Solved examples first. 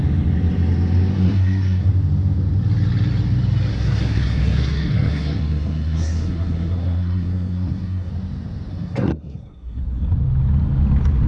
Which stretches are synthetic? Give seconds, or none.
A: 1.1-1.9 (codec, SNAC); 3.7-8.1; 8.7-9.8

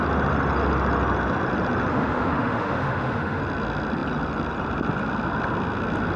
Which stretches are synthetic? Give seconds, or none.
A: 1.9-3.4 (autoencoder, DAC-VAE)

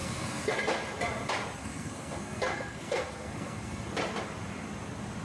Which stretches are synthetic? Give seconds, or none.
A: 0.0-0.6 (codec, SNAC); 1.6-3.9

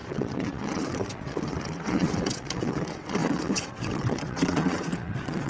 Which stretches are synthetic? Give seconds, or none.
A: 0.0-5.5 (vocoder, WaveNeXt)

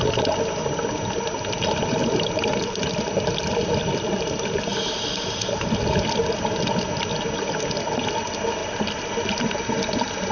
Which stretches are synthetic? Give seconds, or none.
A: 2.0-6.9 (vocoder, BigVGAN v2); 8.6-9.1